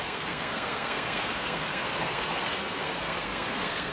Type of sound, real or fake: fake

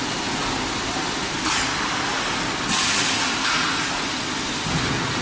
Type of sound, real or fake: real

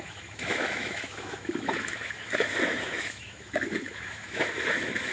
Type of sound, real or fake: fake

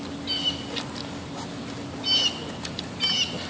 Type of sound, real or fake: real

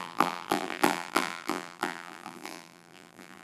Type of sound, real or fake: fake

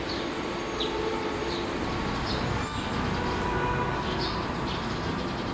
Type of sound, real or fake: real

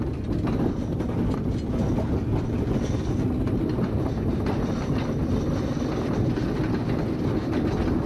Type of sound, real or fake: real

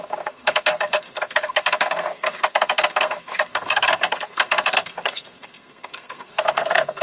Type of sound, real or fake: fake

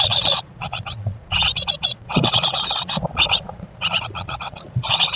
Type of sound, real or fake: fake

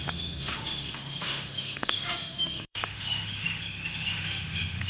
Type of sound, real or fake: fake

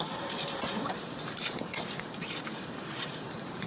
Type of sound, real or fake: fake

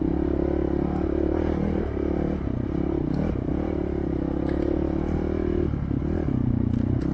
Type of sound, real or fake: real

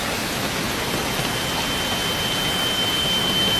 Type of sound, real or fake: fake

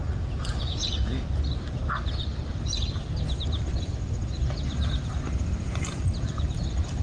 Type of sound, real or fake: real